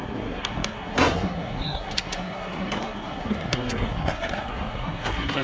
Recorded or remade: remade